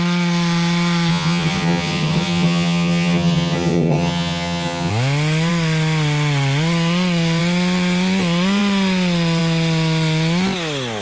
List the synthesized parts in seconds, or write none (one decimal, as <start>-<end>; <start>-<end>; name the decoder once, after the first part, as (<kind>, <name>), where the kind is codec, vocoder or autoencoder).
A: 1.1-4.9 (vocoder, HiFi-GAN)

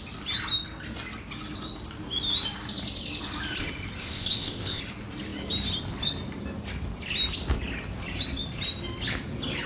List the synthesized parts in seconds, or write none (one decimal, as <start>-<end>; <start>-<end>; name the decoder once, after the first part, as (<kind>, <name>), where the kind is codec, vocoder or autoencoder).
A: 4.0-4.8 (codec, ZipCodec)

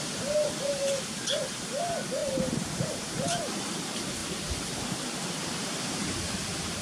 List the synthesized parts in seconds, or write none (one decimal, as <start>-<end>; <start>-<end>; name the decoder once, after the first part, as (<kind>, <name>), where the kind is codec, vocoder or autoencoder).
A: 0.0-6.8 (vocoder, BigVGAN v2)

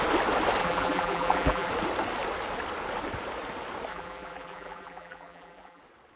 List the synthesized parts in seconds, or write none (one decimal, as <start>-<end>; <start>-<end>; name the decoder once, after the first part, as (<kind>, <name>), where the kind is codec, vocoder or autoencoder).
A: 0.6-1.7 (vocoder, BigVGAN v2); 3.9-5.8

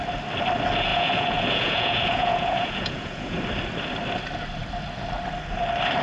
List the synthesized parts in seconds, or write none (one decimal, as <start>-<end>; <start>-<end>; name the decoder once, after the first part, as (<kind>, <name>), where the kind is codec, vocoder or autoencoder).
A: 0.9-3.4 (vocoder, Vocos)